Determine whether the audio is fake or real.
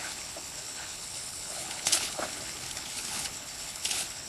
fake